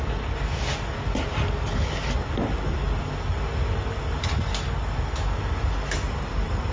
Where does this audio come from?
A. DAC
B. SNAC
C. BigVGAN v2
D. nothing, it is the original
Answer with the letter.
D